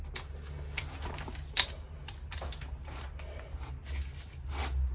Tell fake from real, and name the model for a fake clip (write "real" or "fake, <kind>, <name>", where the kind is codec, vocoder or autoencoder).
real